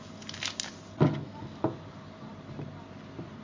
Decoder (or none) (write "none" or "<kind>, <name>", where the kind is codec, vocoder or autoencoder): none